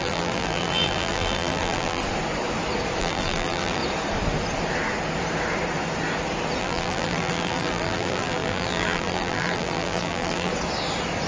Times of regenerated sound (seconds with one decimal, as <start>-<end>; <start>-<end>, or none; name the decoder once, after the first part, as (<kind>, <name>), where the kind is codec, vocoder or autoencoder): 0.0-2.0 (vocoder, BigVGAN v2); 3.0-3.8; 6.6-10.5